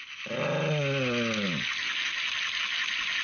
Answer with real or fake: real